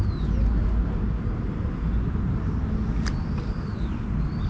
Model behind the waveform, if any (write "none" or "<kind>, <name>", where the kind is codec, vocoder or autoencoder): none